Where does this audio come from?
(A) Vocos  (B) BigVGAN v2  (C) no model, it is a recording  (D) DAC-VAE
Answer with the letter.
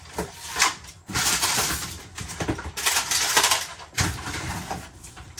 B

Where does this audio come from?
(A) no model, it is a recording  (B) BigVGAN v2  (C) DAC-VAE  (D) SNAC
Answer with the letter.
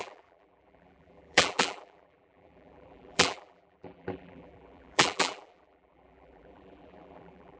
B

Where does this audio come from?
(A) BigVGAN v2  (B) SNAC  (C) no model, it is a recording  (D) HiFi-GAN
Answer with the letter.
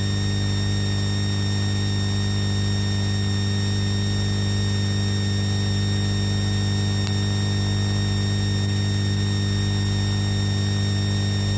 C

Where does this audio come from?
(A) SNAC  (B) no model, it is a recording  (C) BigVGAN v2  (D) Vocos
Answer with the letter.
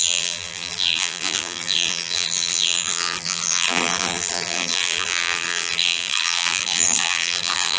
C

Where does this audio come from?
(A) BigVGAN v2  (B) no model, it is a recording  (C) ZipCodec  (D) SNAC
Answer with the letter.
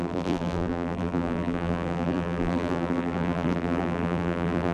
A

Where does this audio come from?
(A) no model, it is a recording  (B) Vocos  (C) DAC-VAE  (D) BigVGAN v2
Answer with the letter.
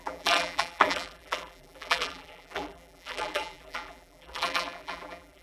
D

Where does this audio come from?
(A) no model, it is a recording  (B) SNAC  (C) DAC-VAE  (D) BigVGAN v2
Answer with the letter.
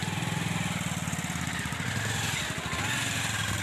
A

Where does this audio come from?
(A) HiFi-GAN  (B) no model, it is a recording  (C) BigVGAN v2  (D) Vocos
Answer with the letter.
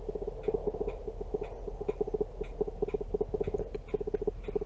B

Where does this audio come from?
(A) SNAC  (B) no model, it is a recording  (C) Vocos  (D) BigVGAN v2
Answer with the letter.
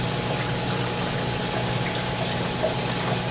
B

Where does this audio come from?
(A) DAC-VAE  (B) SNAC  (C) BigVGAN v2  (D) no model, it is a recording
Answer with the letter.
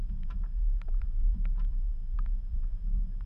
C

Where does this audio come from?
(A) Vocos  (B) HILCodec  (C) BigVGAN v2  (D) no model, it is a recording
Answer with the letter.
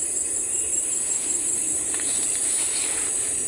C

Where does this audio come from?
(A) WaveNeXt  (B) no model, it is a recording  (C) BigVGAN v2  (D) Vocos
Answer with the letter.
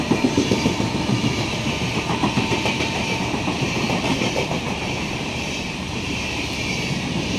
C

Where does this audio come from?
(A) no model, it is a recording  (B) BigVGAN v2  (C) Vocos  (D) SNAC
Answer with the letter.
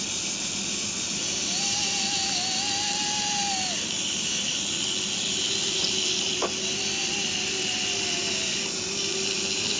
A